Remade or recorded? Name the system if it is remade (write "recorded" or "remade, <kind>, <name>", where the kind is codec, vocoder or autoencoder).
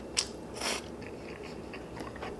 recorded